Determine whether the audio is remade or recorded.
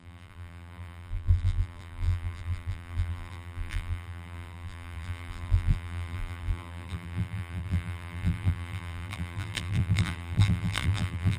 remade